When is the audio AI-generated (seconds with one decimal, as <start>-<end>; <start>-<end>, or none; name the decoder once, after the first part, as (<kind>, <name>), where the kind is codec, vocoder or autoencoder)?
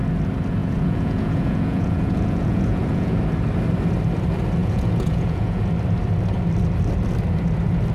0.6-3.2 (vocoder, Vocos); 4.6-5.6